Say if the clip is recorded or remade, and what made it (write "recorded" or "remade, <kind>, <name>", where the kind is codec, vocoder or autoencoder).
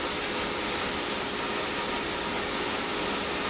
recorded